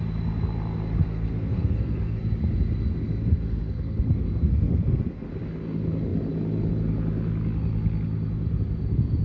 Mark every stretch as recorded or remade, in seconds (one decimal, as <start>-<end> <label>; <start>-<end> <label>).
0.0-1.0 recorded; 1.0-2.2 remade; 2.2-2.9 recorded; 2.9-5.3 remade; 5.3-9.2 recorded